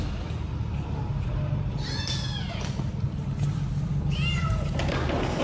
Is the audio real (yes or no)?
yes